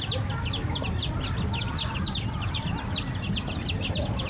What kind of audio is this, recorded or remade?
recorded